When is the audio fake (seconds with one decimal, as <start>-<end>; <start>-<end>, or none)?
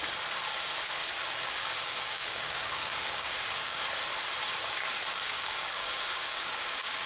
1.0-3.8; 5.1-7.1